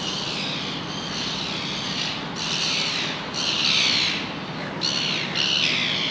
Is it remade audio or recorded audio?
recorded